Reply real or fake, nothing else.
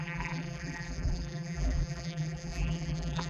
fake